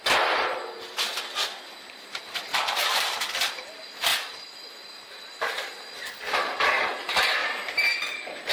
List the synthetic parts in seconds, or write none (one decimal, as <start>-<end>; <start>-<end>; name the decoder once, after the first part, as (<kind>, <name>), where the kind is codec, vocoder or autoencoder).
2.5-3.3 (vocoder, BigVGAN v2); 7.4-8.5